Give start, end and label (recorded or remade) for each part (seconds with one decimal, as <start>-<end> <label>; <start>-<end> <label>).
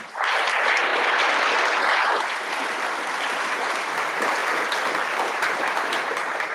0.0-0.9 remade; 0.9-3.3 recorded; 3.3-4.4 remade; 4.4-5.3 recorded; 5.3-6.5 remade